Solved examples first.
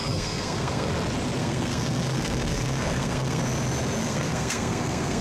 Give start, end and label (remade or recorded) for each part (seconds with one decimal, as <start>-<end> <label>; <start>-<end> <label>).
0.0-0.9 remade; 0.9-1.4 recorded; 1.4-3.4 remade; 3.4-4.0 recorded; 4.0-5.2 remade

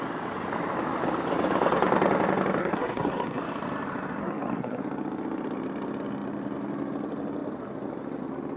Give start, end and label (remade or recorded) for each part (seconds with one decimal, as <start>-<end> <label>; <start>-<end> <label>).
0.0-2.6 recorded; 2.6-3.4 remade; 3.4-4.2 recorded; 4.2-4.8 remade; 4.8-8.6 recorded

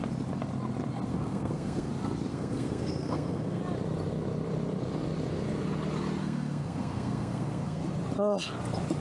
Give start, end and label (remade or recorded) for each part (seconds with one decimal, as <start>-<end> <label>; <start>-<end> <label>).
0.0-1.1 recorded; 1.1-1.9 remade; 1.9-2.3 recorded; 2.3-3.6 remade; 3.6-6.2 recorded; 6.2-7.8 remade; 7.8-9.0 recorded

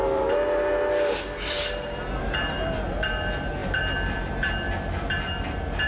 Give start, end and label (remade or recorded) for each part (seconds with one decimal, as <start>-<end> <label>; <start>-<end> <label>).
0.0-5.9 recorded

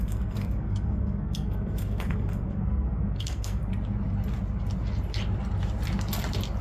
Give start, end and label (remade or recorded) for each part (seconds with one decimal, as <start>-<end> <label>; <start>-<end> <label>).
0.0-3.7 remade; 3.7-6.6 recorded

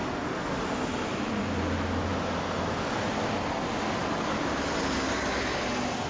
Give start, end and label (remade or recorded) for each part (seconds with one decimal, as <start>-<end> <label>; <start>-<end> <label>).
0.0-6.1 recorded

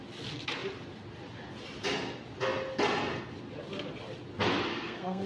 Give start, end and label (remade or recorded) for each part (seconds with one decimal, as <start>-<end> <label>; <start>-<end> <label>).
0.0-4.7 recorded; 4.7-5.3 remade

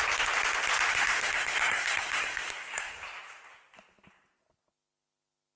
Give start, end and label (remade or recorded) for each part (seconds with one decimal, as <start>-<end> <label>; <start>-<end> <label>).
0.0-0.9 recorded; 0.9-3.0 remade; 3.0-5.6 recorded